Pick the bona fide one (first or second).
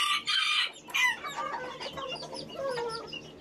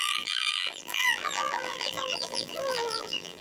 first